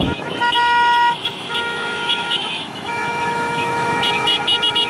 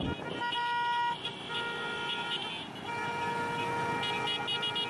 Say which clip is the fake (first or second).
first